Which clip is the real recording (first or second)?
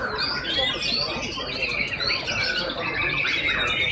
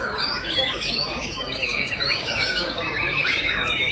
first